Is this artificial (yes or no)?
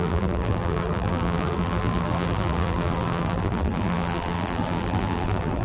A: yes